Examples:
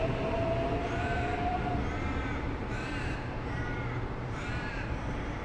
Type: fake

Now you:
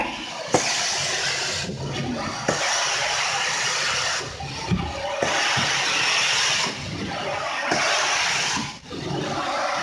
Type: real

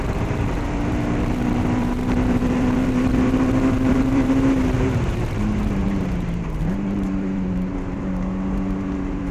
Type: fake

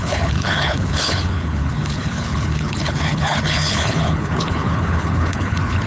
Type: fake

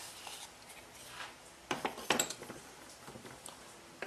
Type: real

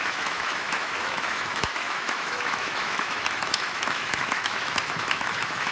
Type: fake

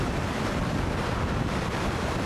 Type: fake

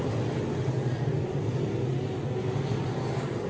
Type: real